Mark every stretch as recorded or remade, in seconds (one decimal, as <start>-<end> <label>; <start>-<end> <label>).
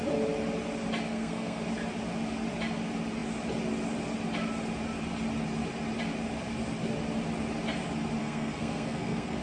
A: 0.0-1.1 recorded; 1.1-1.6 remade; 1.6-8.2 recorded; 8.2-9.4 remade